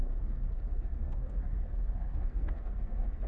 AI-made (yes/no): yes